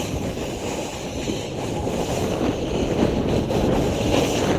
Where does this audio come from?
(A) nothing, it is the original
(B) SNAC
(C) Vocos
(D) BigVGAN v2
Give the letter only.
A